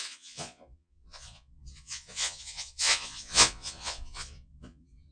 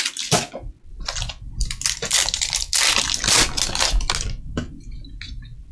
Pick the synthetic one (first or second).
first